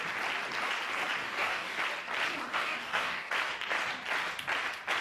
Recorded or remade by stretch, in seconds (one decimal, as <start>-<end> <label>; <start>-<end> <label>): 0.0-1.2 recorded; 1.2-1.8 remade; 1.8-2.5 recorded; 2.5-3.3 remade; 3.3-5.0 recorded